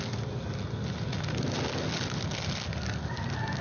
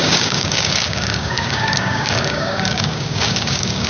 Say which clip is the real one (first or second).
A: first